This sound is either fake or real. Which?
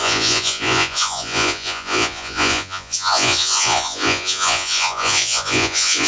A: fake